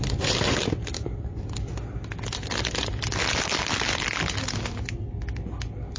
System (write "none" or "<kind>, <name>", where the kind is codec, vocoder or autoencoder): none